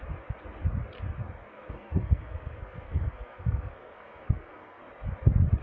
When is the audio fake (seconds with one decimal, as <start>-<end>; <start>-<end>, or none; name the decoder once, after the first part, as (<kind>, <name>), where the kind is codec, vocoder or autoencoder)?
1.4-4.8 (codec, SNAC)